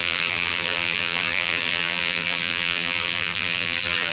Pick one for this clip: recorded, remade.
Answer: remade